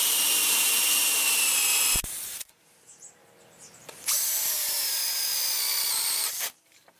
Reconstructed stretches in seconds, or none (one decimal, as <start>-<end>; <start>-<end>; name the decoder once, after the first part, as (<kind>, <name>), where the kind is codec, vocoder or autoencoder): 0.0-5.0 (vocoder, BigVGAN v2); 6.0-7.0